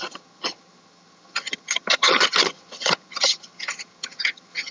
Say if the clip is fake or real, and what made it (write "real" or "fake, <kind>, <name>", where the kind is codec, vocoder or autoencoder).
fake, vocoder, HiFi-GAN